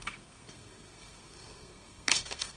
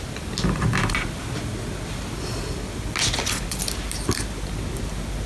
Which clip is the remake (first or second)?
first